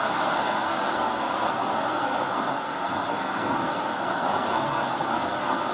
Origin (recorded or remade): remade